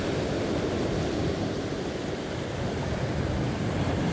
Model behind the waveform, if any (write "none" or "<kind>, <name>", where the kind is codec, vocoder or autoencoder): none